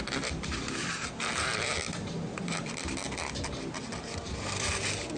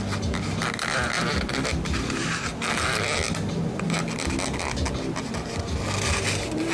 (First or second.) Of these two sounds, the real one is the second